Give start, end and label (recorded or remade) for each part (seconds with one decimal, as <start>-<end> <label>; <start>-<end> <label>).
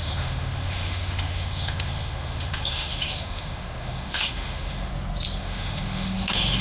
0.0-4.9 remade; 4.9-5.4 recorded; 5.4-6.6 remade